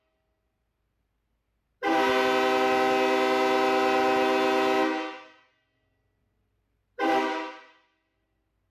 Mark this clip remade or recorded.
recorded